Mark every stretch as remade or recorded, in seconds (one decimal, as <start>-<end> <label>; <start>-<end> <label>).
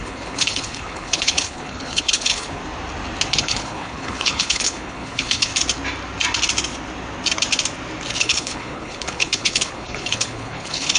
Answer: 0.0-2.6 remade; 2.6-3.3 recorded; 3.3-5.5 remade; 5.5-8.2 recorded; 8.2-11.0 remade